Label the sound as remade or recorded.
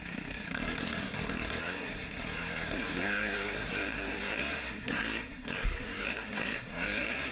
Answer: remade